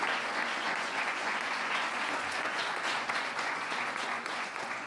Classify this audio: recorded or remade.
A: remade